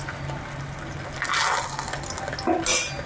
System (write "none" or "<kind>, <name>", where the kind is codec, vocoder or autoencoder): none